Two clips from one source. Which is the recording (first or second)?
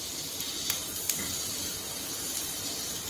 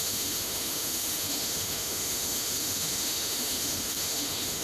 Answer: first